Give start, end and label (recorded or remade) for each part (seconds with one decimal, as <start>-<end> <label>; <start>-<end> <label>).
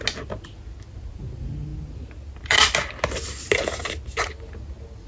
0.0-5.1 recorded